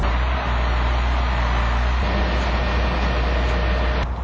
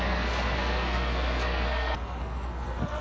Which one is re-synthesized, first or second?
second